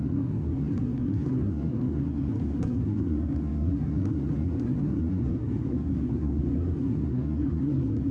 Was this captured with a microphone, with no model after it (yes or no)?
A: no